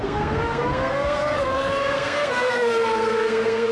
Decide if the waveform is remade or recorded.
remade